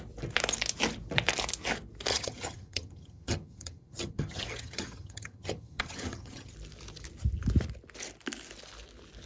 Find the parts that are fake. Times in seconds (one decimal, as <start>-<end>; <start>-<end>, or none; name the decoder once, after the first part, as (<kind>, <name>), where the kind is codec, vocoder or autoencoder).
2.1-6.5 (vocoder, HiFi-GAN)